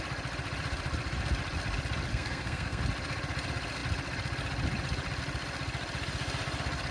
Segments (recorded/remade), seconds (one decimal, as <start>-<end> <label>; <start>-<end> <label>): 0.0-2.1 recorded; 2.1-2.8 remade; 2.8-6.9 recorded